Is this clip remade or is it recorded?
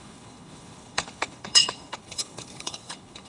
remade